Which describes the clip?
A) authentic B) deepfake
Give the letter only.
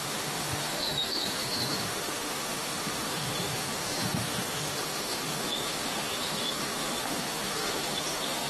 B